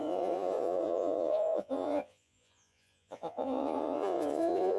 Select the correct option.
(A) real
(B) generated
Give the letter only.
B